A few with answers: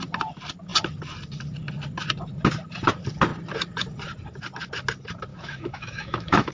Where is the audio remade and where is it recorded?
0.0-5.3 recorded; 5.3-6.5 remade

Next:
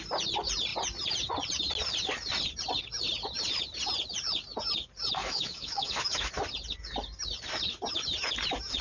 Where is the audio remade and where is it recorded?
0.0-5.2 recorded; 5.2-6.3 remade; 6.3-8.8 recorded

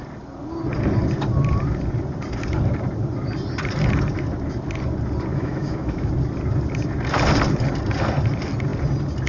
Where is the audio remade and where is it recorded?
0.0-5.3 recorded; 5.3-6.1 remade; 6.1-9.3 recorded